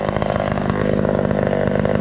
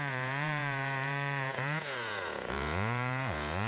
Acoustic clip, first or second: first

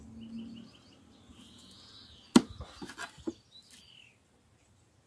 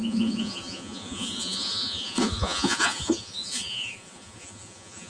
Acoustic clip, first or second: first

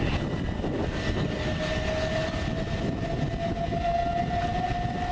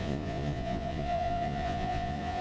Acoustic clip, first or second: first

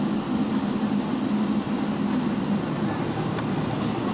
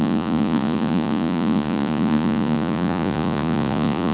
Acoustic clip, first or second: first